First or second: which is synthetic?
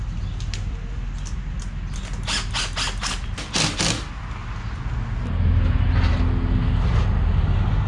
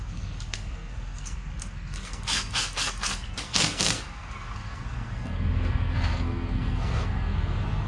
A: second